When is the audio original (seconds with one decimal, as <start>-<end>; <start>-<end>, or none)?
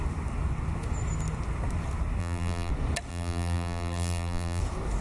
0.0-2.2; 2.7-3.1; 4.6-5.0